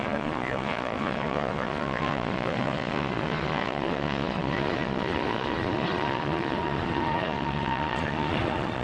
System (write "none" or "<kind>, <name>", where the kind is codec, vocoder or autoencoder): vocoder, Vocos